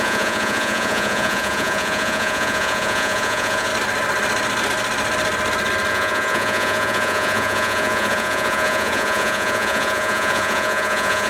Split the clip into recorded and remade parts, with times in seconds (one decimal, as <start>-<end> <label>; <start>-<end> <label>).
0.0-3.7 remade; 3.7-5.9 recorded; 5.9-11.3 remade

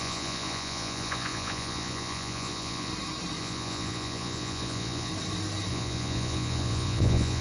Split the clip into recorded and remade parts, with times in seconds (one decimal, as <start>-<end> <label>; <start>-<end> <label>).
0.0-2.9 remade; 2.9-3.4 recorded; 3.4-5.1 remade; 5.1-5.7 recorded; 5.7-7.4 remade

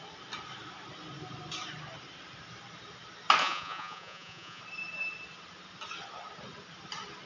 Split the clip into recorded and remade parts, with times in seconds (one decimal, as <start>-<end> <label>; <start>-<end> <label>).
0.0-3.4 recorded; 3.4-4.6 remade; 4.6-7.3 recorded

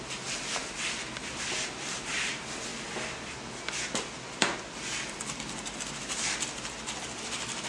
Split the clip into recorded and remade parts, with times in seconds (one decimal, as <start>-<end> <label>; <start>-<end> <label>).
0.0-7.7 recorded

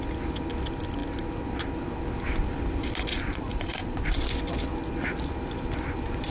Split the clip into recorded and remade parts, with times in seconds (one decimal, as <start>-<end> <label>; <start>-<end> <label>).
0.0-3.1 recorded; 3.1-4.3 remade; 4.3-6.3 recorded